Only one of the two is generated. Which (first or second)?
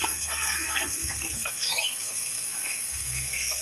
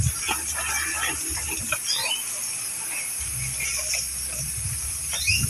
first